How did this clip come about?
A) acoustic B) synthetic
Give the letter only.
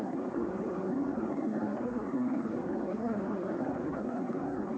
B